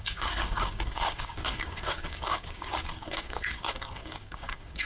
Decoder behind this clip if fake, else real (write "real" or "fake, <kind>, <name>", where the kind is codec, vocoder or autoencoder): fake, codec, DAC